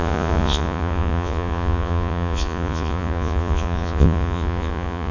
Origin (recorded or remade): remade